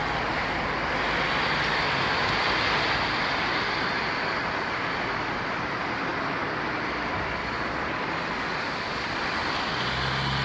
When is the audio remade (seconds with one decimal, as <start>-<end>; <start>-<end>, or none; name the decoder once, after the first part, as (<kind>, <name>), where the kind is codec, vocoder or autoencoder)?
none